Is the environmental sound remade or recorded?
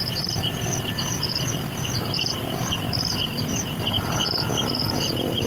remade